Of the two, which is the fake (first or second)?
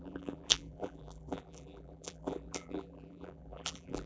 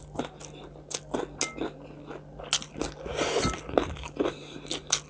first